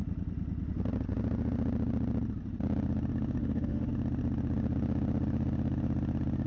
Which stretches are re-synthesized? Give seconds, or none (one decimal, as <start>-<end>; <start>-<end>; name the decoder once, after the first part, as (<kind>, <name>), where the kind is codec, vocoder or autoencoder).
3.4-3.9 (autoencoder, DAC-VAE)